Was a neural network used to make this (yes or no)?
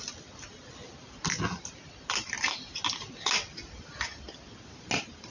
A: no